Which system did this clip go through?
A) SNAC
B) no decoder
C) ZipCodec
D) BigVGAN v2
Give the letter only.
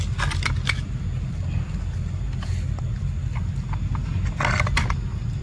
B